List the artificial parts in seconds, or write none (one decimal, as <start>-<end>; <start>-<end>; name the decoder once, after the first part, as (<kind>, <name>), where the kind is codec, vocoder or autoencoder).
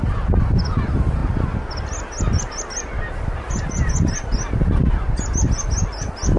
none